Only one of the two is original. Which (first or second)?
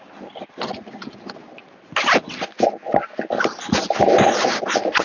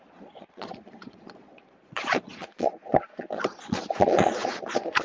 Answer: first